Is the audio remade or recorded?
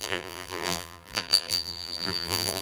remade